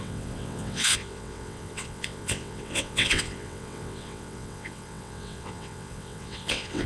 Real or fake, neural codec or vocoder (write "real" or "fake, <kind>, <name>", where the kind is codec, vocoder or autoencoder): fake, vocoder, WaveNeXt